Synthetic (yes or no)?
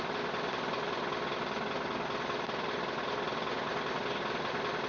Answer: no